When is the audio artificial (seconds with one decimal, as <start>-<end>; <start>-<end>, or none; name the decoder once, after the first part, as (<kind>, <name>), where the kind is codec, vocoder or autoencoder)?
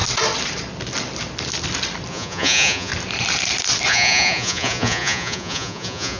2.1-2.9 (vocoder, Vocos); 3.9-6.2